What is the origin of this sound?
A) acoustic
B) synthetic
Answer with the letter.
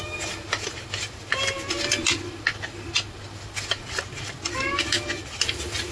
A